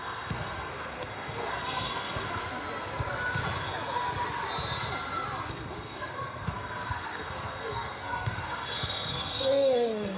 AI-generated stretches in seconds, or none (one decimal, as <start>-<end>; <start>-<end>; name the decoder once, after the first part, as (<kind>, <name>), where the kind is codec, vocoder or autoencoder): 0.0-2.4 (codec, SNAC); 5.5-10.2